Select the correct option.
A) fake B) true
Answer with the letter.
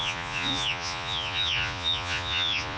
A